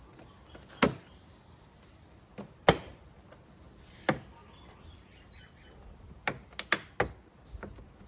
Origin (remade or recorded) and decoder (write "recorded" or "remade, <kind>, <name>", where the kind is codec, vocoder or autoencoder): recorded